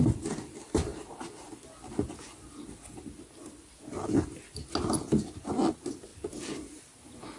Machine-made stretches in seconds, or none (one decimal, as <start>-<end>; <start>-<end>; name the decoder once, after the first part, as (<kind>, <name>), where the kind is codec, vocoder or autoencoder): none